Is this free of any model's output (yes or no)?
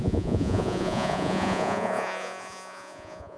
no